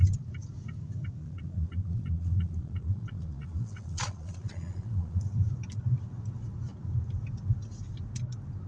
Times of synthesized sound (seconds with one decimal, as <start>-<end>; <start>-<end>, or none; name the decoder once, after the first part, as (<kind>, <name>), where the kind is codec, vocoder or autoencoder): 1.2-5.2 (vocoder, Vocos)